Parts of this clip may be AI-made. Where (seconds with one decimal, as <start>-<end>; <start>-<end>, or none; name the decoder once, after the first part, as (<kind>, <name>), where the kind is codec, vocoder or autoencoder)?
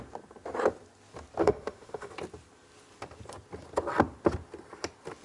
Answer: 1.4-2.1 (autoencoder, DAC-VAE)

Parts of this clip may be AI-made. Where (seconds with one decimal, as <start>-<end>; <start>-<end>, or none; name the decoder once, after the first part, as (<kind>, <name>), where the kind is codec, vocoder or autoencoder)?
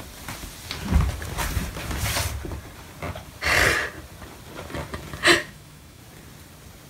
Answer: 5.4-6.0 (autoencoder, DAC-VAE)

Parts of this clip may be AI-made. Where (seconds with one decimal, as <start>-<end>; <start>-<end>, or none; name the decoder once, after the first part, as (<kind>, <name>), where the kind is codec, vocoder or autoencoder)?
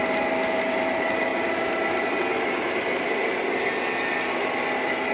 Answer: none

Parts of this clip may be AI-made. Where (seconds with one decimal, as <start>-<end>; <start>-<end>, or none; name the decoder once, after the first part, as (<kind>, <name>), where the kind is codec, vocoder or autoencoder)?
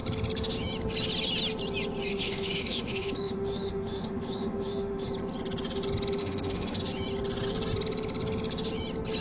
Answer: 2.1-5.1 (autoencoder, DAC-VAE); 6.2-6.8